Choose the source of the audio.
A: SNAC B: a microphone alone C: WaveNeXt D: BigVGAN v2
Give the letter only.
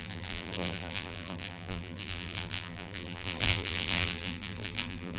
D